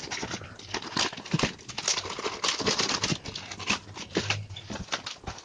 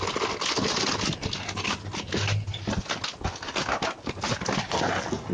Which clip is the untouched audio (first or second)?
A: second